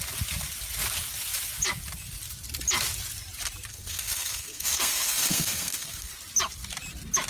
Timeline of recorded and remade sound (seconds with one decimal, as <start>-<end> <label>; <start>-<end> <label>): 0.0-3.7 recorded; 3.7-6.1 remade; 6.1-7.3 recorded